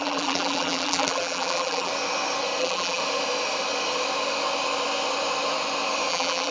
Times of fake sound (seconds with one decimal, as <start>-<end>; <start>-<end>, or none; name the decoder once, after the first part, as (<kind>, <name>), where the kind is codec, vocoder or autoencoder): 0.0-1.9 (vocoder, BigVGAN v2); 2.6-3.0; 6.1-6.5